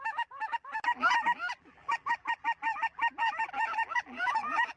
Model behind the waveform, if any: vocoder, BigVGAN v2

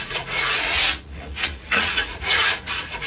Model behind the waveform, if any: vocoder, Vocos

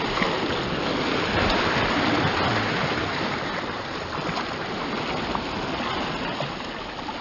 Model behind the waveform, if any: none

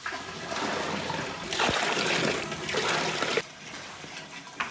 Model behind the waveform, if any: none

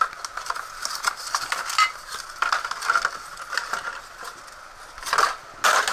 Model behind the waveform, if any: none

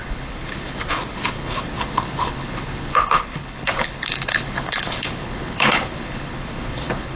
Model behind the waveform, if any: codec, HILCodec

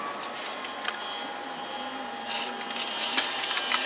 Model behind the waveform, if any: none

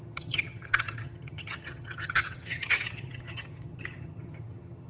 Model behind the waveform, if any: vocoder, HiFi-GAN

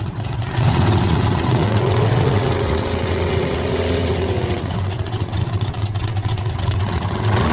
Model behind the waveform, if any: vocoder, WaveNeXt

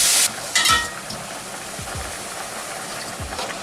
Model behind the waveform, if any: none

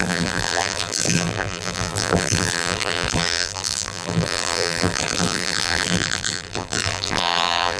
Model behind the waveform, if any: vocoder, BigVGAN v2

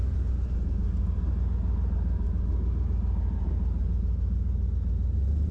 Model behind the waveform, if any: none